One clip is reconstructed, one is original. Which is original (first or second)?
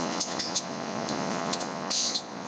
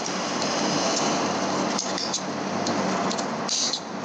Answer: second